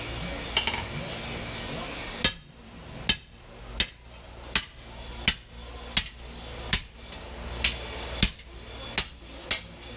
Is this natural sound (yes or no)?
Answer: yes